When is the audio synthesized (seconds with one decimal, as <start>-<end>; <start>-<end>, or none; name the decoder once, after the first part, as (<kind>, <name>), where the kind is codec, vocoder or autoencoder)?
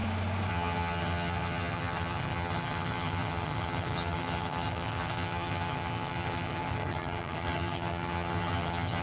0.5-9.0 (vocoder, HiFi-GAN)